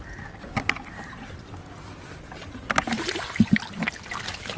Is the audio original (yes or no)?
yes